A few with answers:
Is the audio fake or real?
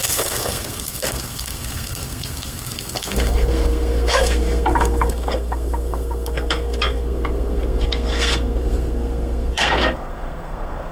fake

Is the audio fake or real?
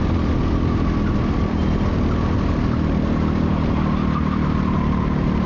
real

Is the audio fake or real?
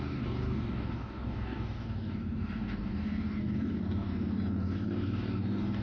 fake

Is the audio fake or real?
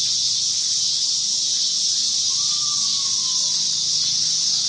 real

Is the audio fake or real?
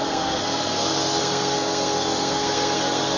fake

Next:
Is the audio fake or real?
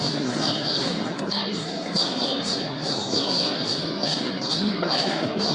fake